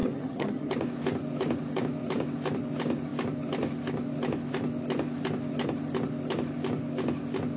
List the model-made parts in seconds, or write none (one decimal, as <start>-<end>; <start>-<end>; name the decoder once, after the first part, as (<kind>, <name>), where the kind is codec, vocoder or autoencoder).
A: 0.0-0.7 (vocoder, HiFi-GAN)